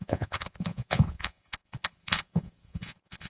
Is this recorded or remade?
remade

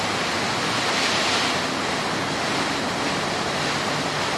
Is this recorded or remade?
recorded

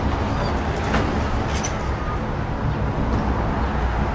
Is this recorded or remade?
recorded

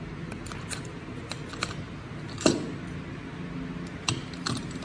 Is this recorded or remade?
recorded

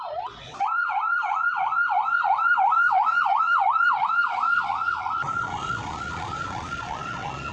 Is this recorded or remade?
remade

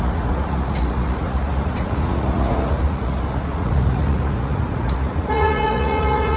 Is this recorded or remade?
remade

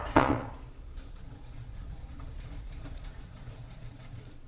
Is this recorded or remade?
remade